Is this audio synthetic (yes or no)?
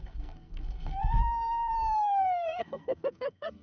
yes